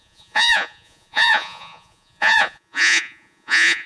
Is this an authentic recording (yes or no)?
no